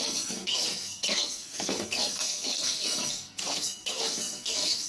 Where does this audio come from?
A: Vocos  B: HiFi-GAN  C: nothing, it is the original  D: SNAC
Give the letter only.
D